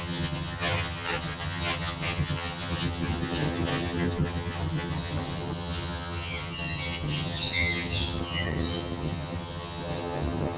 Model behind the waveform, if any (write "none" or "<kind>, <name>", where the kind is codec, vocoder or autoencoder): vocoder, HiFi-GAN